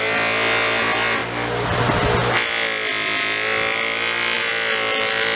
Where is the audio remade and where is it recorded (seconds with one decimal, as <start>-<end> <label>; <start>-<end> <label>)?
0.0-5.4 recorded